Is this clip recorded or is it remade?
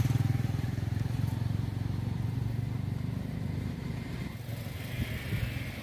remade